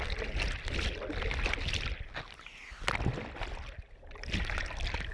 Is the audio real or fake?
real